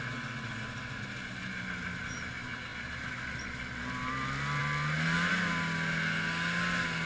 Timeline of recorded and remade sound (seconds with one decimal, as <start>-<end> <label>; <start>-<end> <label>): 0.0-7.1 recorded